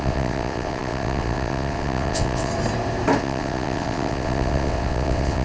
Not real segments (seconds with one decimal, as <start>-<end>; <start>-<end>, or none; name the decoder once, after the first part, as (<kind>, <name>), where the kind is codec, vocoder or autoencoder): 0.0-2.5 (vocoder, WaveNeXt); 3.2-5.4